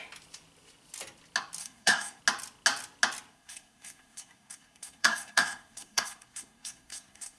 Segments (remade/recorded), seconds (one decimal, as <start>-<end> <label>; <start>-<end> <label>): 0.0-1.6 recorded; 1.6-2.2 remade; 2.2-3.3 recorded; 3.3-7.4 remade